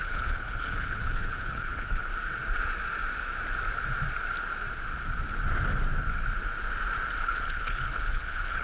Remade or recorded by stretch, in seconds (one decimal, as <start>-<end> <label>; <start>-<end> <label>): 0.0-2.1 remade; 2.1-7.2 recorded; 7.2-8.6 remade